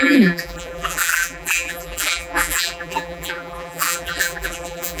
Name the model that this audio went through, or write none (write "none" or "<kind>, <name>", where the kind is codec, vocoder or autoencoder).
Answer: vocoder, BigVGAN v2